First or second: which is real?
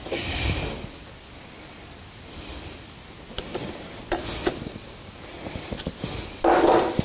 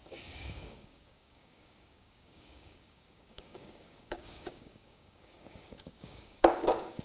first